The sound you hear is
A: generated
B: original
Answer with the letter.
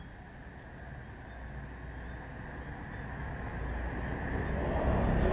B